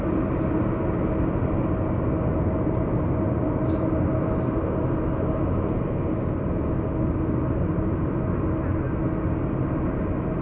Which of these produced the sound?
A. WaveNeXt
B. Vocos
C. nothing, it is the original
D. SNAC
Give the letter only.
C